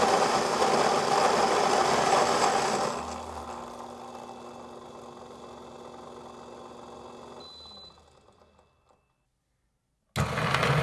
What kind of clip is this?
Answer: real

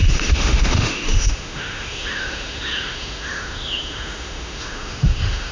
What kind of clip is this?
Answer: fake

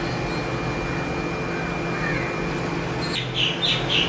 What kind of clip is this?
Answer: real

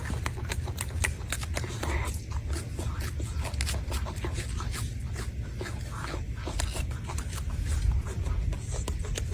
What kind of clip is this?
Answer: real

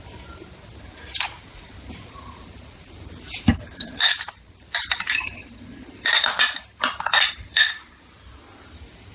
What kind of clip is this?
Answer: fake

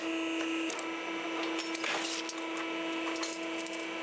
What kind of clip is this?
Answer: real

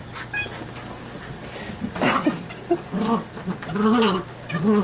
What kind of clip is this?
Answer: real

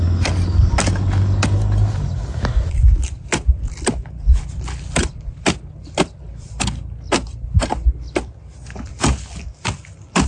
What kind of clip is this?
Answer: real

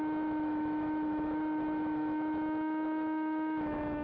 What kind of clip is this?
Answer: fake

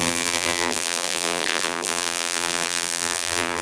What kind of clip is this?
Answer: fake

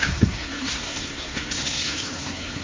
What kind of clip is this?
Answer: fake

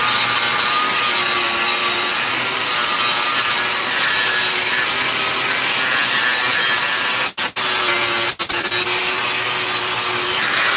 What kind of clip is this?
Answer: real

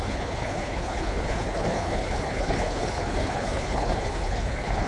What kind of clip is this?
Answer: fake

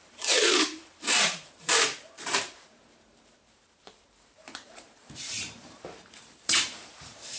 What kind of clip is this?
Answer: fake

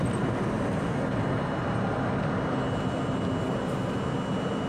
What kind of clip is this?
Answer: real